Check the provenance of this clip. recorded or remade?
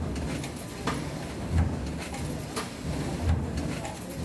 recorded